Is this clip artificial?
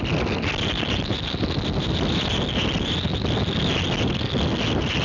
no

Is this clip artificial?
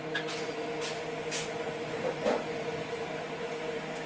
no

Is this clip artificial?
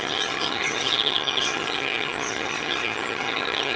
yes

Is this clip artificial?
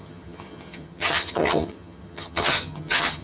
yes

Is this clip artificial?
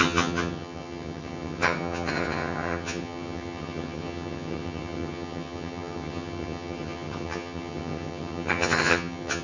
yes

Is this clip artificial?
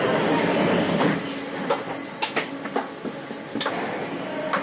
no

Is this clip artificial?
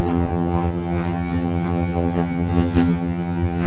yes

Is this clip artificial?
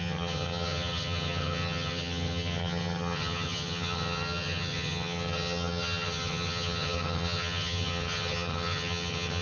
yes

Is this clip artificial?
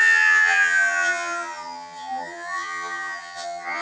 yes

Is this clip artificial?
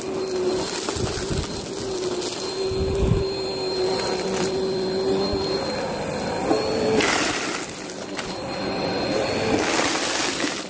no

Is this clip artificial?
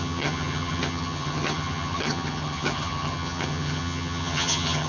yes